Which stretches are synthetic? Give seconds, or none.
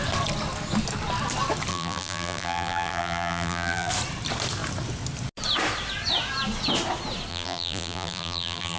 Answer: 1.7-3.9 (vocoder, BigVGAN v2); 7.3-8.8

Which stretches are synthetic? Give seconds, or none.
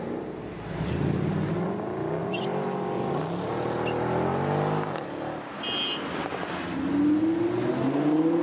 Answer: 2.2-2.8 (vocoder, BigVGAN v2)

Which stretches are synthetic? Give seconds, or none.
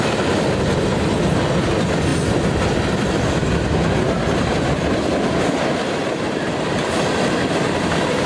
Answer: 2.1-7.1 (vocoder, BigVGAN v2)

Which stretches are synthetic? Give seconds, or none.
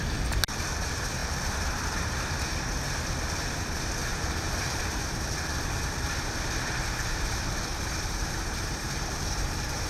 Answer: 1.2-2.0 (vocoder, BigVGAN v2); 4.0-4.8; 7.7-9.9